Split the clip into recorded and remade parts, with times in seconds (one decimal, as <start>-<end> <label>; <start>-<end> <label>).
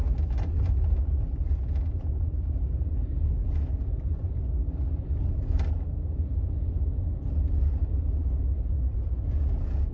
0.0-2.0 recorded; 2.0-4.6 remade; 4.6-7.9 recorded; 7.9-9.9 remade